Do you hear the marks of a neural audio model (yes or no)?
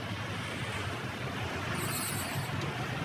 no